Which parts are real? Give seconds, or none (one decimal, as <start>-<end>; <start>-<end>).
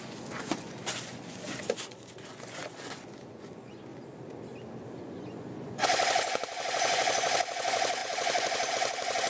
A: 3.9-5.0